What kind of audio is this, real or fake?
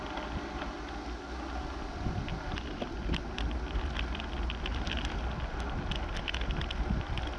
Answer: real